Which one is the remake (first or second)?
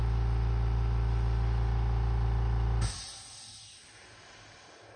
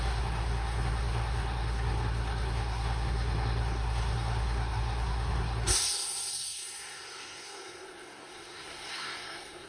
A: second